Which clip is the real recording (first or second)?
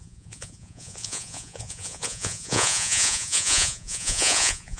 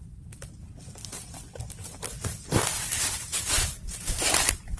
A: second